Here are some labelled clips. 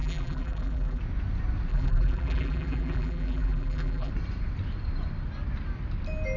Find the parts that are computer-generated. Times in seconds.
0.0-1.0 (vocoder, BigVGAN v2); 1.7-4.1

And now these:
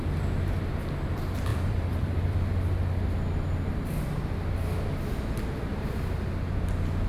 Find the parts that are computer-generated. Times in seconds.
1.5-2.5 (vocoder, BigVGAN v2)